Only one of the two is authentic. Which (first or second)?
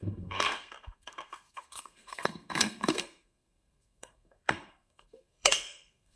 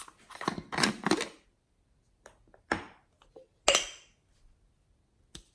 second